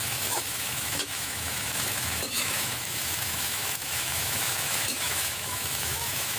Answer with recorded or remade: remade